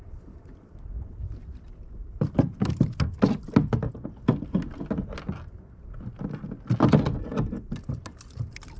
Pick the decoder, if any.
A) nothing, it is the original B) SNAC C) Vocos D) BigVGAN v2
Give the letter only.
A